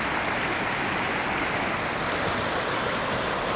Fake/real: real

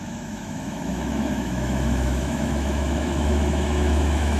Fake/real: fake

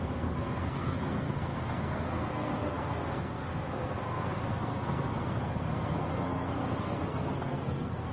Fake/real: fake